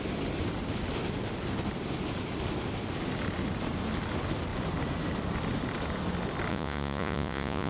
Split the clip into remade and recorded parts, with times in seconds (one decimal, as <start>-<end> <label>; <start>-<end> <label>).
0.0-6.5 recorded; 6.5-7.7 remade